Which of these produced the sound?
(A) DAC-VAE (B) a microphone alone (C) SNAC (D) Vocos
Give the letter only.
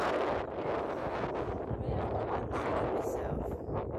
B